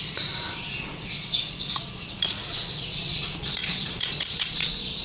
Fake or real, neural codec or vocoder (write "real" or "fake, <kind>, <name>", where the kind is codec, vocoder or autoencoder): fake, vocoder, Vocos